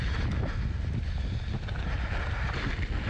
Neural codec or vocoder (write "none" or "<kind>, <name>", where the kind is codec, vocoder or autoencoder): none